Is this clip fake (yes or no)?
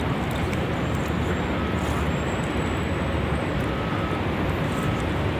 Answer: no